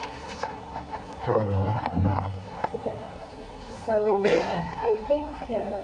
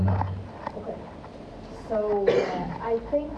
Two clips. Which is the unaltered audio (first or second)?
second